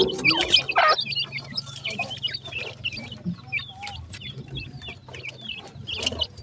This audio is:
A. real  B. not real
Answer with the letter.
A